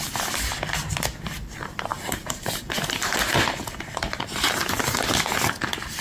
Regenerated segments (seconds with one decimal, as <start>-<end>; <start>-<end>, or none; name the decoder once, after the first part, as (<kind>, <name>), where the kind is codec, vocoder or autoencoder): 1.9-4.5 (vocoder, BigVGAN v2)